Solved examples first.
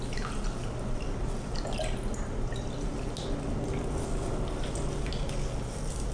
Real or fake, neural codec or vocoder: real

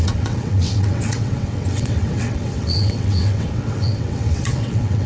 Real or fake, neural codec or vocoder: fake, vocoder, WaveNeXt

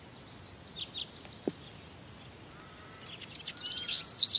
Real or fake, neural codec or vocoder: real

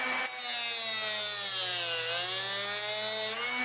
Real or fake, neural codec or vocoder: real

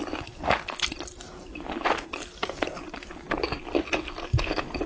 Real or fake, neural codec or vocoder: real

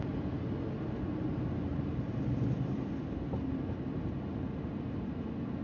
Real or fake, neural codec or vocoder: real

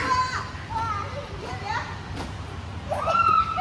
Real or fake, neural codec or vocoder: real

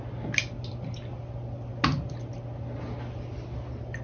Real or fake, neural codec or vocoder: real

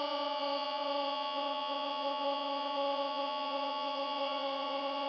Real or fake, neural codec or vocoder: fake, vocoder, WaveNeXt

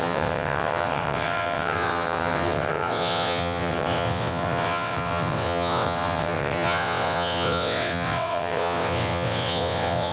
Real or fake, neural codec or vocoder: fake, vocoder, WaveNeXt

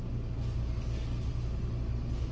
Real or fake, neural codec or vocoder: real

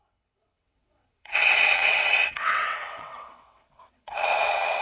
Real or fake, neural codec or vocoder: fake, vocoder, WaveNeXt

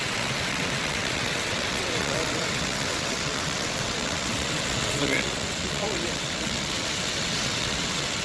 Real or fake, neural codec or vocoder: fake, vocoder, WaveNeXt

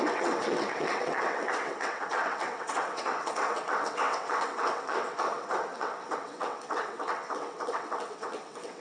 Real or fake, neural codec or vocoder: fake, vocoder, WaveNeXt